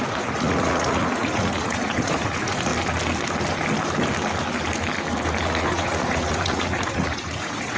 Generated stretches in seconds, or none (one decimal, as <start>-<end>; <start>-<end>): 0.0-2.7; 5.4-7.8